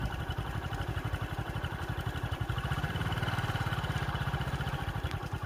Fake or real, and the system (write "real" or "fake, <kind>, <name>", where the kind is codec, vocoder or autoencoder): fake, vocoder, BigVGAN v2